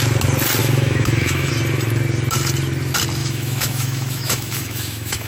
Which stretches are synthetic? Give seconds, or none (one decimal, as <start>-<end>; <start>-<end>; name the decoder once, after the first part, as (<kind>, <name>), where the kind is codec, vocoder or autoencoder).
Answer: 0.6-1.5 (autoencoder, DAC-VAE); 3.2-5.3